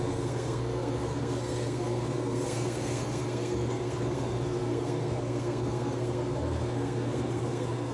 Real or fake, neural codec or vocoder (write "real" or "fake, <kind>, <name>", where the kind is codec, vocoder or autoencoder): fake, codec, SNAC